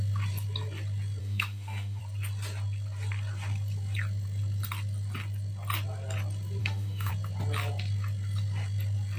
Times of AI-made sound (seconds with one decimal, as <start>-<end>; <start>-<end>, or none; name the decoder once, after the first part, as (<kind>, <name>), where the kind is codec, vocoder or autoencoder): 1.2-2.0 (autoencoder, DAC-VAE); 6.6-7.1